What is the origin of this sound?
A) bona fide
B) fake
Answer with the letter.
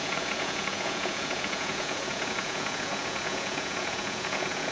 B